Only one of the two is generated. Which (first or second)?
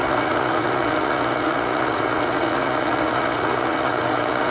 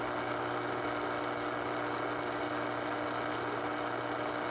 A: first